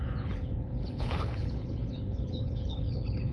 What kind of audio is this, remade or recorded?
remade